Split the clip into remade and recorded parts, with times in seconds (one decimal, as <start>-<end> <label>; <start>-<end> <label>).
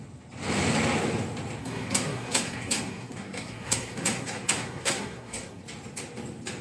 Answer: 0.0-1.6 recorded; 1.6-5.6 remade; 5.6-6.6 recorded